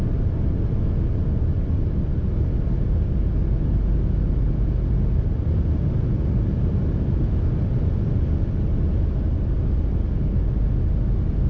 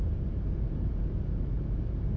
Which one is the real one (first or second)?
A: first